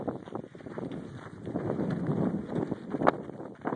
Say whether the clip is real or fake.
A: real